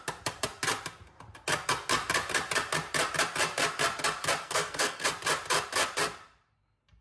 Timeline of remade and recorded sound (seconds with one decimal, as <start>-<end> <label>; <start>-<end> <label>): 0.0-4.4 recorded; 4.4-5.1 remade; 5.1-7.0 recorded